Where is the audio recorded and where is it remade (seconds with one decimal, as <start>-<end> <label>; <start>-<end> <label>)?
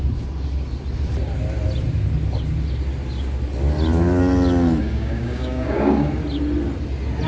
0.0-4.8 recorded; 4.8-6.1 remade; 6.1-7.3 recorded